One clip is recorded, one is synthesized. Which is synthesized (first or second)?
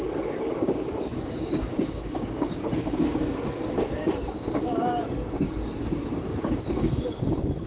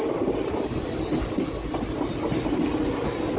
first